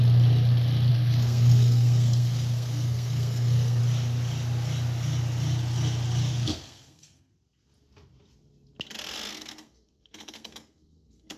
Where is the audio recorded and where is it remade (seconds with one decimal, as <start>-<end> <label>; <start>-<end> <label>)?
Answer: 0.0-0.9 recorded; 0.9-3.8 remade; 3.8-6.3 recorded; 6.3-7.3 remade; 7.3-9.3 recorded; 9.3-11.4 remade